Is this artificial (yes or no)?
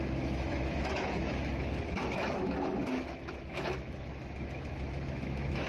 yes